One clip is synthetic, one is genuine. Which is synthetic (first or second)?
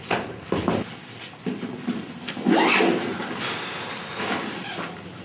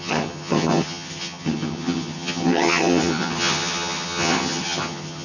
second